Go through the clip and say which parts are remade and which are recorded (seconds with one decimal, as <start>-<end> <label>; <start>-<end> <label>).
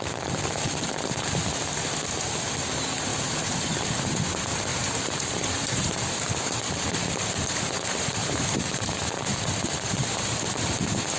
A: 0.0-3.1 recorded; 3.1-4.0 remade; 4.0-4.7 recorded; 4.7-5.9 remade; 5.9-8.2 recorded; 8.2-9.2 remade; 9.2-11.2 recorded